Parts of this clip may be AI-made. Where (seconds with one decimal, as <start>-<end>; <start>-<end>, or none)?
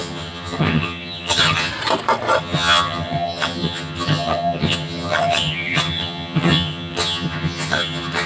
0.0-1.7; 2.4-8.3